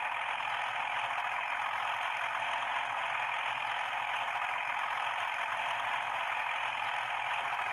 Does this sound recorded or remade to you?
recorded